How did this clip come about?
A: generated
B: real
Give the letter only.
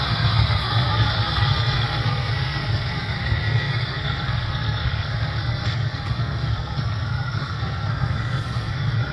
A